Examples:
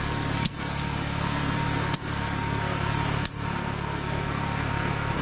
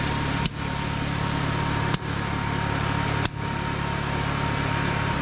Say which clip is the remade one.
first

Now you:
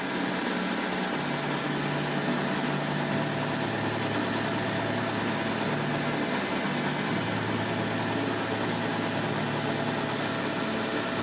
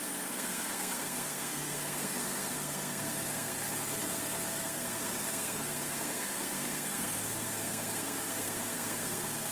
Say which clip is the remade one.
second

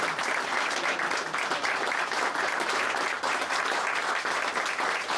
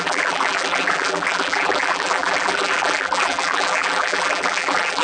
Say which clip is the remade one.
second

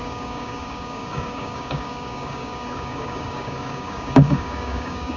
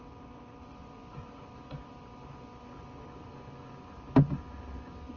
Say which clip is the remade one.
first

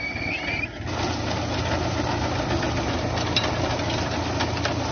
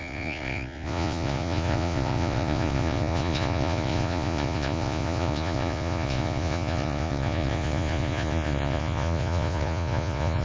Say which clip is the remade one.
second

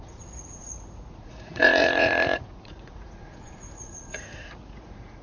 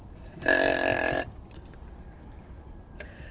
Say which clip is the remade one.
first